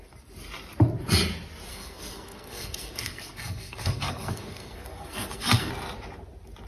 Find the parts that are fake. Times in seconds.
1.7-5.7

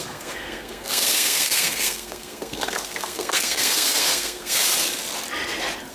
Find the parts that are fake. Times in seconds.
0.0-4.6

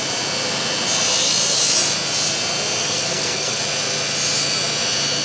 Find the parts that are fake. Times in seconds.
2.8-3.6

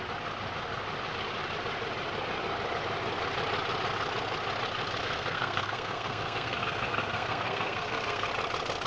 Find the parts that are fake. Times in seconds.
5.0-8.3

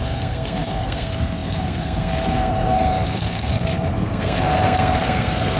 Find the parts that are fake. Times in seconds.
0.0-5.6